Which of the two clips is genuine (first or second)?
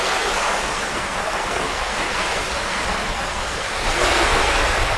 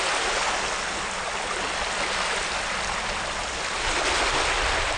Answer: second